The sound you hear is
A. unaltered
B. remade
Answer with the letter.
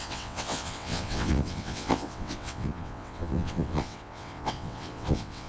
B